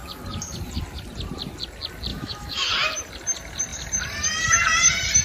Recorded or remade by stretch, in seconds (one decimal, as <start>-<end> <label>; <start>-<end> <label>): 0.0-2.1 recorded; 2.1-2.7 remade; 2.7-5.2 recorded

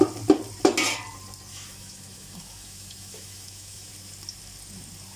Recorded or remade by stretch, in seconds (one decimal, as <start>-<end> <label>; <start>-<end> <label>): 0.0-1.5 recorded; 1.5-3.9 remade; 3.9-5.2 recorded

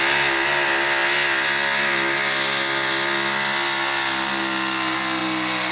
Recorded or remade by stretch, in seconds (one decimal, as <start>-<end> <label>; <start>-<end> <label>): 0.0-5.7 recorded